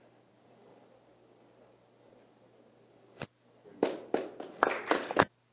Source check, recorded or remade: recorded